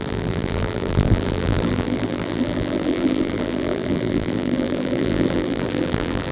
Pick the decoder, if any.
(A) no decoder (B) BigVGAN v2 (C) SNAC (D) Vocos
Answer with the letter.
B